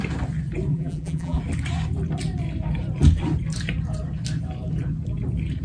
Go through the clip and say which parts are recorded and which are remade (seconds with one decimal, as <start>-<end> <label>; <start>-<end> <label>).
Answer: 0.0-0.7 recorded; 0.7-1.4 remade; 1.4-5.6 recorded